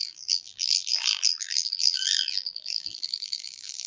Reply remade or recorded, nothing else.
remade